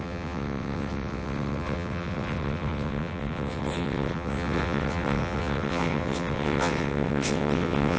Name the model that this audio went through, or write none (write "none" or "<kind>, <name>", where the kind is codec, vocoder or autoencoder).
vocoder, WaveNeXt